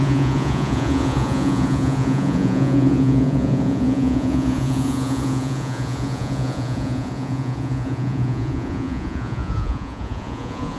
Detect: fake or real fake